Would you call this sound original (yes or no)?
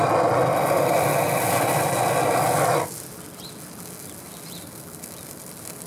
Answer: yes